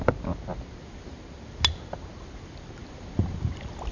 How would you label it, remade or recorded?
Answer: recorded